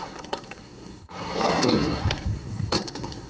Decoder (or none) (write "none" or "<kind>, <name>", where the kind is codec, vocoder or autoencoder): codec, SNAC